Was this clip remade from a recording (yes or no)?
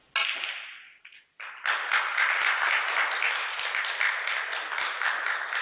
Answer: no